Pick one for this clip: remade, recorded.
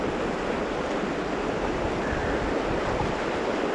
recorded